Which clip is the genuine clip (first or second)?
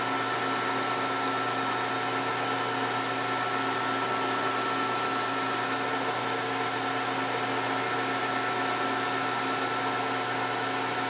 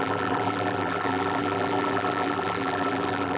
first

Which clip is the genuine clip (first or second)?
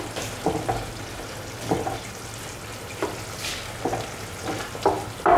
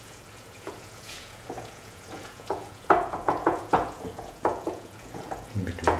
first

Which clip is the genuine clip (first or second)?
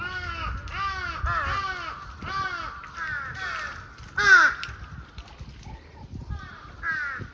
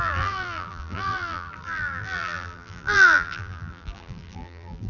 first